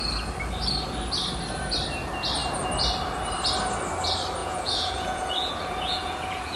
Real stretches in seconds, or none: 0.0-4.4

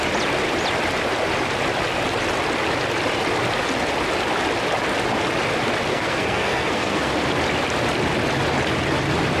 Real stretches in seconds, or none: 0.0-5.9; 7.1-9.4

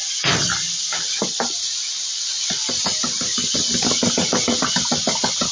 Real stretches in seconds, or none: 0.0-5.5

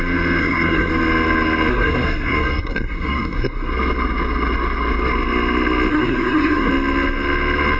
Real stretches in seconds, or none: 0.0-0.4; 0.9-1.7; 3.7-5.9; 6.7-7.8

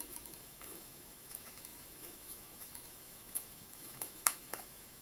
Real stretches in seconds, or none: none

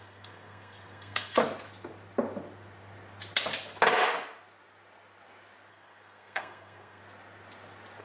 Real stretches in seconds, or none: 1.4-5.7; 7.0-8.0

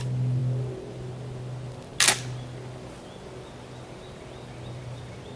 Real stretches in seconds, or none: 0.0-5.4

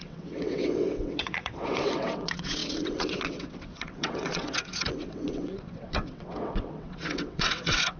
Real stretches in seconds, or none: none